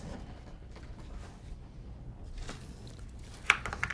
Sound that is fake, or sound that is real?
real